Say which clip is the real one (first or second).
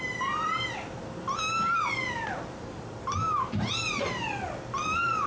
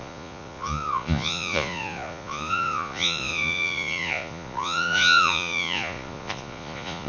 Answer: first